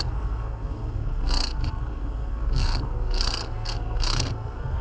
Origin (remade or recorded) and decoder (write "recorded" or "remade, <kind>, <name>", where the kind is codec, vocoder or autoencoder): remade, codec, SNAC